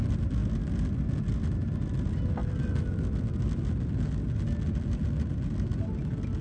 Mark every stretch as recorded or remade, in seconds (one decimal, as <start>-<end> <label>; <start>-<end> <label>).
0.0-6.4 recorded